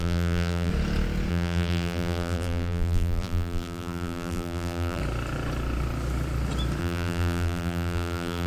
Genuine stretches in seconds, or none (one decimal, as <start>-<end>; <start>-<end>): 0.7-1.3; 5.0-6.8